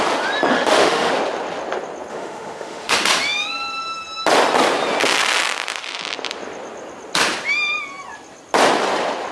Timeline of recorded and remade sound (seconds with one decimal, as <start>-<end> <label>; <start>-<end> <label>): 0.0-0.5 recorded; 0.5-1.1 remade; 1.1-2.1 recorded; 2.1-2.9 remade; 2.9-9.3 recorded